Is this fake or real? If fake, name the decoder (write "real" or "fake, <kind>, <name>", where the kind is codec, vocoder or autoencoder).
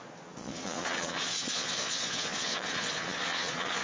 fake, vocoder, Vocos